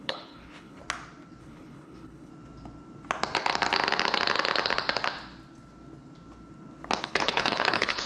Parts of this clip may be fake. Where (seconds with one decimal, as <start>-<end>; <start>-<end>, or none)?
0.0-0.8; 1.4-2.3; 7.0-8.1